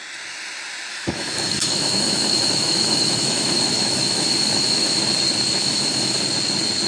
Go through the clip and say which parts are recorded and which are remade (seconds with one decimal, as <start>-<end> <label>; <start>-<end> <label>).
0.0-0.9 recorded; 0.9-5.0 remade; 5.0-5.6 recorded; 5.6-6.2 remade; 6.2-6.9 recorded